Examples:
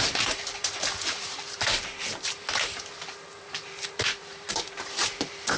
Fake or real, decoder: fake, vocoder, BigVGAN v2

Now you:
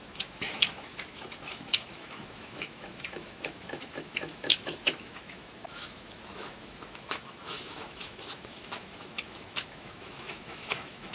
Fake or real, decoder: fake, autoencoder, DAC-VAE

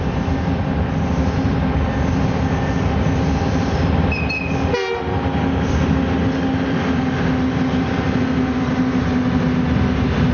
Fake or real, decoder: real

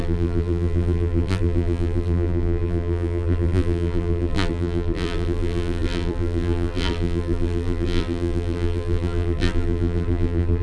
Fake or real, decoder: fake, vocoder, BigVGAN v2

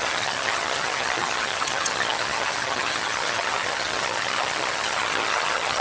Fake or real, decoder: fake, vocoder, HiFi-GAN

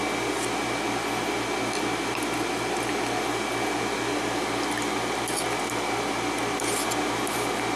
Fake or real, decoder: real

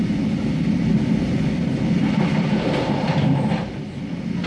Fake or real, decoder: real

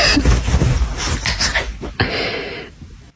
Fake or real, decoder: real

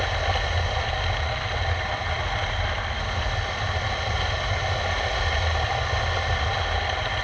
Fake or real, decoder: real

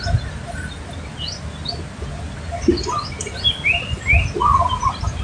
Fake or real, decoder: real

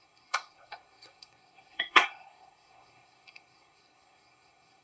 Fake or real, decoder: fake, codec, SNAC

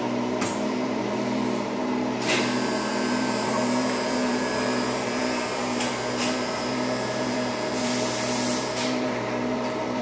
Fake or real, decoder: fake, vocoder, BigVGAN v2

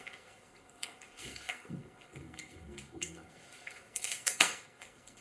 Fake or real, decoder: fake, codec, SNAC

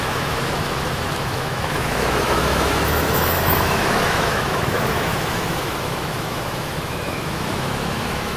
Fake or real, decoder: fake, autoencoder, DAC-VAE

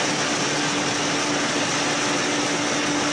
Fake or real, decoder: real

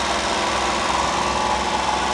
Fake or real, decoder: real